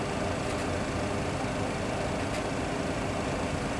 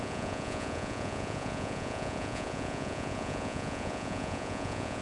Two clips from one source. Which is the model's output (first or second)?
second